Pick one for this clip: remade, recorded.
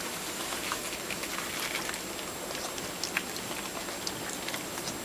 recorded